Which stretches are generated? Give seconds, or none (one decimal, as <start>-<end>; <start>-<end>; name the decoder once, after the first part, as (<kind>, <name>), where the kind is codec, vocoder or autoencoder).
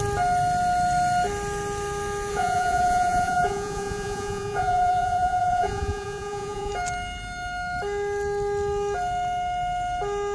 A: 2.3-6.7 (vocoder, Vocos)